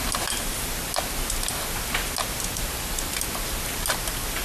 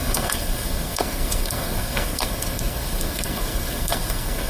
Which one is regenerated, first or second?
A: second